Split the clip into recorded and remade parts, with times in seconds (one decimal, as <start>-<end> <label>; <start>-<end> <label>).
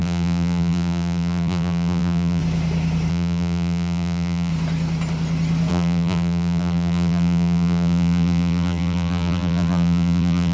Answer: 0.0-2.4 remade; 2.4-3.1 recorded; 3.1-4.5 remade; 4.5-5.7 recorded; 5.7-10.5 remade